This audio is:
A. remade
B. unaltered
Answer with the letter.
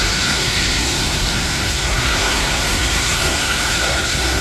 A